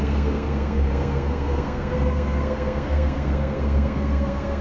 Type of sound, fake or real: fake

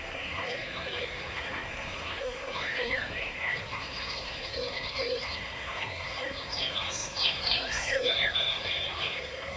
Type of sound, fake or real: fake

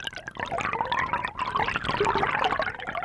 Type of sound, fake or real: real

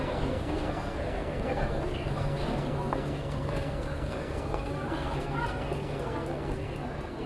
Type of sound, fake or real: fake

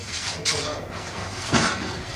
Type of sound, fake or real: fake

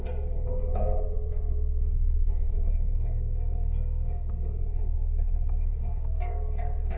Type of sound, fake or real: fake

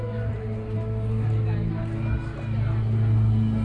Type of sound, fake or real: real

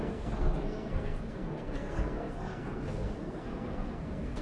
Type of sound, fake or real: fake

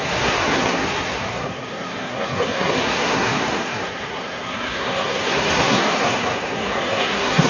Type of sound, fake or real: fake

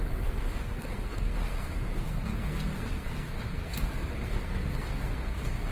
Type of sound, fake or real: fake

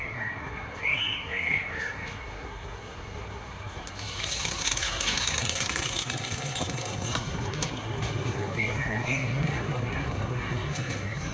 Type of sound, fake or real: fake